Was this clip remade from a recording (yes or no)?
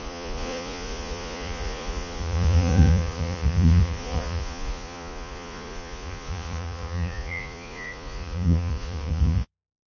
yes